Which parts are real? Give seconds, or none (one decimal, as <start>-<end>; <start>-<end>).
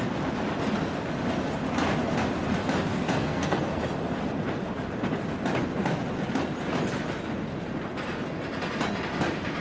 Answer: 0.0-3.1; 3.8-9.6